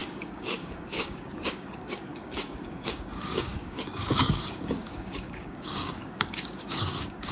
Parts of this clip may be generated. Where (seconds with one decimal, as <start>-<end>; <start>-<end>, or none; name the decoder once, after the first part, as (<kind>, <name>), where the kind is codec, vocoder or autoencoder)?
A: 0.0-7.3 (codec, DAC)